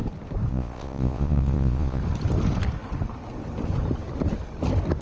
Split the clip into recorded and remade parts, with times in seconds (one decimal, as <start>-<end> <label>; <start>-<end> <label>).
0.0-0.5 recorded; 0.5-2.0 remade; 2.0-5.0 recorded